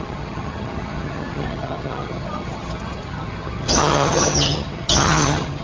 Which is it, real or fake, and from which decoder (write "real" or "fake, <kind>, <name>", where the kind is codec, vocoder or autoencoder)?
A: fake, vocoder, HiFi-GAN